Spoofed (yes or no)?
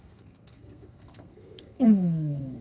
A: yes